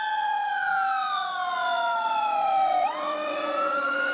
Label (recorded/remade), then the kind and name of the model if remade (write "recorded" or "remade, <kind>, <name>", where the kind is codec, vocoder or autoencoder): remade, vocoder, WaveNeXt